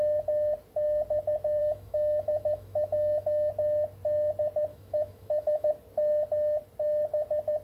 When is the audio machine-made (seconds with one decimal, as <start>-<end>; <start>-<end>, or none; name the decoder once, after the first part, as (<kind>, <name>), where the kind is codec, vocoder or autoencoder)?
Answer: 1.6-3.5 (autoencoder, DAC-VAE); 4.7-5.7

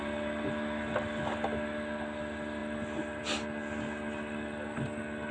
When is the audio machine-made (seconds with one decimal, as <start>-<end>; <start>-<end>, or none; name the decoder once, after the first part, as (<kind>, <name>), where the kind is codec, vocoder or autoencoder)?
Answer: none

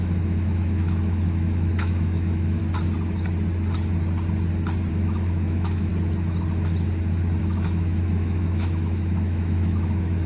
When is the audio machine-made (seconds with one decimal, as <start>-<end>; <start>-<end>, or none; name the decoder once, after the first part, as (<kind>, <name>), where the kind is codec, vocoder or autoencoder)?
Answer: 0.0-2.6 (autoencoder, DAC-VAE); 4.9-5.9; 7.4-10.3

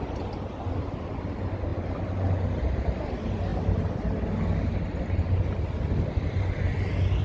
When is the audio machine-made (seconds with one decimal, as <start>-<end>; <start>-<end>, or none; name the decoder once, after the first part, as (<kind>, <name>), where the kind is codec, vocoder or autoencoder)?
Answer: none

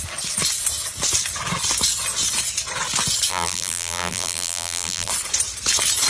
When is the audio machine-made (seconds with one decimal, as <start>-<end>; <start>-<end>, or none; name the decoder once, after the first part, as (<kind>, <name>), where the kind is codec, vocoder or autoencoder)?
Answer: 3.3-5.1 (vocoder, BigVGAN v2)

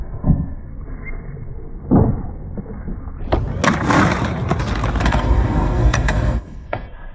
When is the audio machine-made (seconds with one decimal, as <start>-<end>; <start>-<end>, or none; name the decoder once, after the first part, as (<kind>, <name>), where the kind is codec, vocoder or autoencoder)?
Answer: 0.0-0.7 (codec, SNAC); 5.0-7.1

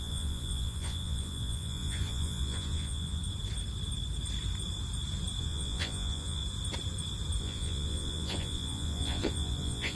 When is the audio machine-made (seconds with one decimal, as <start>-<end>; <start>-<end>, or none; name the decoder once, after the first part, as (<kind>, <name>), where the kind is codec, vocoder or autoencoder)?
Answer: 0.0-3.2 (vocoder, Vocos); 5.4-6.4; 7.4-9.9